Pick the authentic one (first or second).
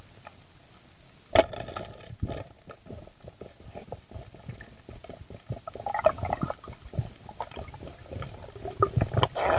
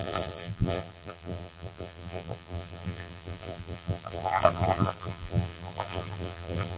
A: first